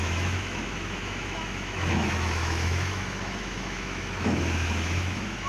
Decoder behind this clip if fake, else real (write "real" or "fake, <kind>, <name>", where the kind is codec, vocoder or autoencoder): fake, autoencoder, DAC-VAE